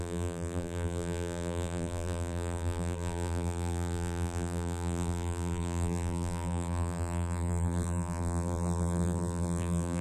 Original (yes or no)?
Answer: no